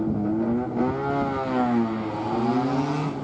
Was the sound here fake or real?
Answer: real